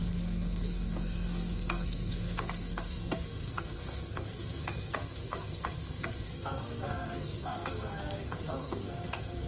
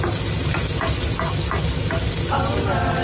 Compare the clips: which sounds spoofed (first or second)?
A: first